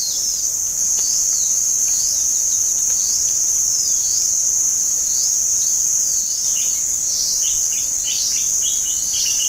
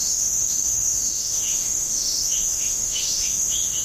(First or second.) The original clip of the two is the first